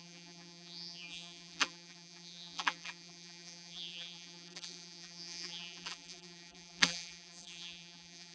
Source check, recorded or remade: remade